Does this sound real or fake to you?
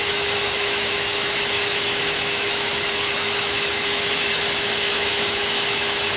fake